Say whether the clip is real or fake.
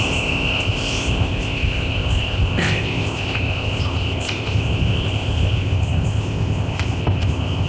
fake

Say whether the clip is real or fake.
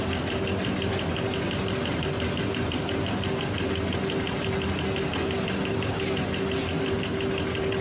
real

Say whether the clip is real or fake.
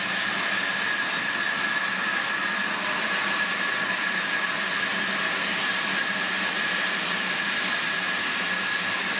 real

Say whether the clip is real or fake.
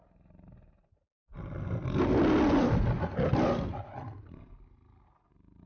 real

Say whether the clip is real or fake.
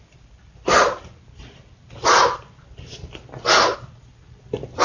real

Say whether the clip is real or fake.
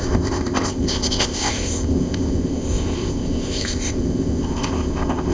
fake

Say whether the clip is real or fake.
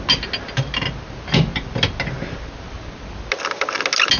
real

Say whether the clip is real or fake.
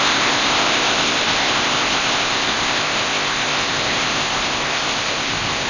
fake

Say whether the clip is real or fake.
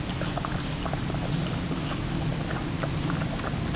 real